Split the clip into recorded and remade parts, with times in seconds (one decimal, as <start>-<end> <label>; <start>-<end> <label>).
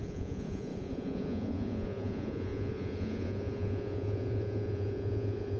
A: 0.0-5.6 remade